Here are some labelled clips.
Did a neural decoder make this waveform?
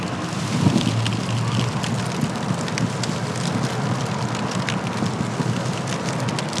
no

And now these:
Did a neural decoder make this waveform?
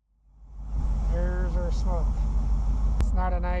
no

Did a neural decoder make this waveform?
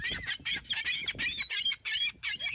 no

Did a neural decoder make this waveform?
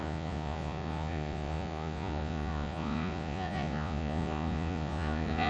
yes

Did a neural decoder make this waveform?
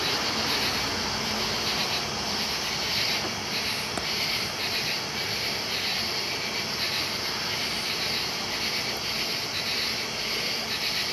no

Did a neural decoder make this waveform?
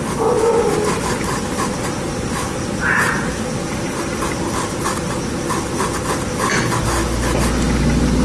no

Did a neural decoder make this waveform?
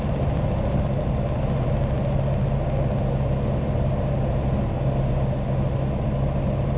no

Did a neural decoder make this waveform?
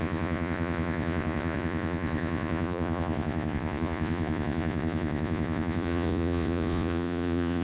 yes